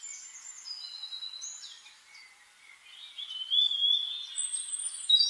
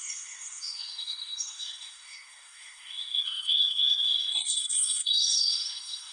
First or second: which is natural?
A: first